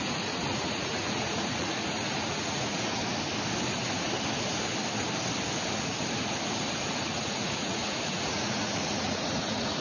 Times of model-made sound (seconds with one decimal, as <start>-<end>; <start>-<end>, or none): 0.0-3.0; 6.7-9.8